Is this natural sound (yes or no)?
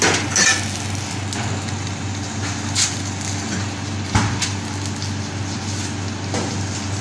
yes